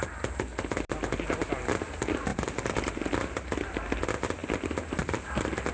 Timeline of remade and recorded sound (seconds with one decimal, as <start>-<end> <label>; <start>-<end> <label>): 0.0-2.3 recorded; 2.3-3.0 remade; 3.0-5.7 recorded

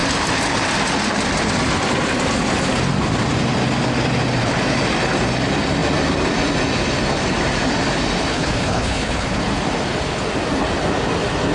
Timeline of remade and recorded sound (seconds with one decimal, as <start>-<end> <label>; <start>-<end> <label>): 0.0-8.3 recorded; 8.3-9.4 remade; 9.4-11.5 recorded

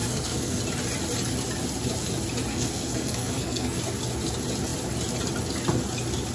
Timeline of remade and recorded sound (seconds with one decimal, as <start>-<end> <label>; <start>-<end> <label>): 0.0-0.6 remade; 0.6-2.5 recorded; 2.5-3.8 remade; 3.8-6.3 recorded

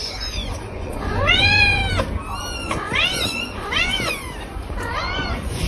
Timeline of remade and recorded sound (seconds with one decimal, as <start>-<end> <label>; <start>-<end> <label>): 0.0-1.8 remade; 1.8-2.4 recorded; 2.4-5.7 remade